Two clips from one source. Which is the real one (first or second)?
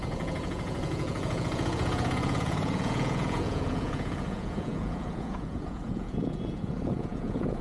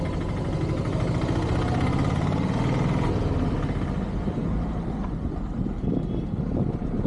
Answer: second